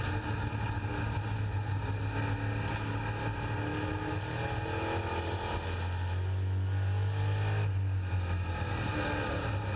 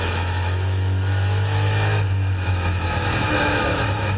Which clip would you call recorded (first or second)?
first